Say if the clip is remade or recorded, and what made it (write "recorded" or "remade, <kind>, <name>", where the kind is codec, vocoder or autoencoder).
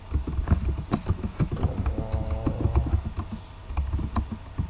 recorded